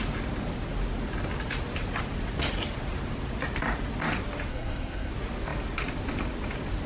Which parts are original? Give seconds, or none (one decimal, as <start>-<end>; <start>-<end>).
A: 0.0-4.5; 5.1-6.9